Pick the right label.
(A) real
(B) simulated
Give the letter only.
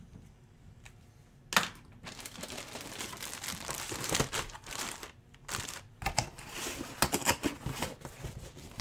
A